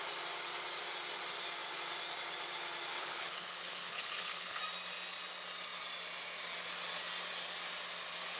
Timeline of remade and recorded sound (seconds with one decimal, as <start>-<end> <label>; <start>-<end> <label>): 0.0-2.9 recorded; 2.9-4.6 remade; 4.6-8.4 recorded